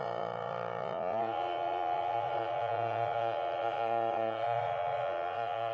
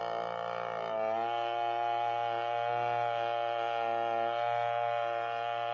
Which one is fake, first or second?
first